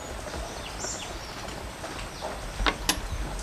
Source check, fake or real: real